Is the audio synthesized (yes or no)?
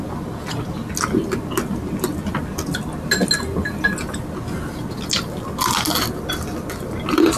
no